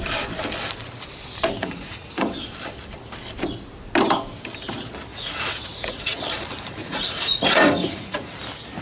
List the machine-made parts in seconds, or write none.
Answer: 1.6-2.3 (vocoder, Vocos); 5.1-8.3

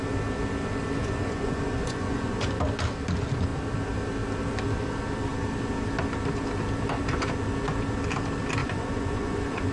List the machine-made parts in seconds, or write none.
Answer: 1.0-2.5 (vocoder, Vocos); 8.6-9.7